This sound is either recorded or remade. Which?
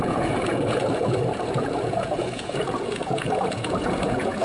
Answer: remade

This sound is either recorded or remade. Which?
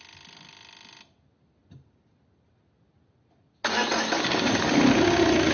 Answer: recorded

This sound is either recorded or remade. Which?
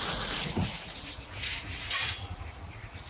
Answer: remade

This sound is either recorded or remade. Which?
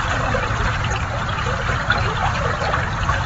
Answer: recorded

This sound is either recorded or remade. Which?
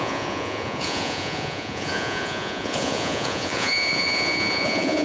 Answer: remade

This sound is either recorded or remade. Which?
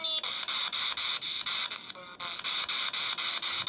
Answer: recorded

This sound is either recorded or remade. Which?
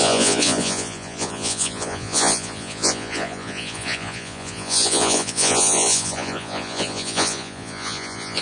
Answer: remade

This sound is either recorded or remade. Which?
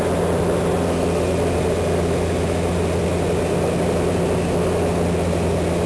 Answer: recorded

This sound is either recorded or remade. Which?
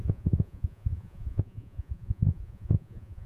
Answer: remade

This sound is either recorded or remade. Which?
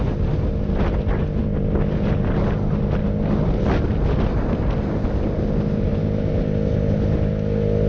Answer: recorded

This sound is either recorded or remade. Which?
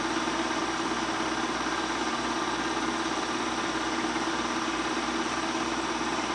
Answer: recorded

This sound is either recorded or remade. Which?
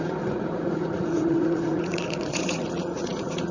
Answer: remade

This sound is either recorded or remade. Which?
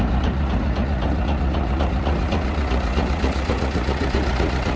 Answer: remade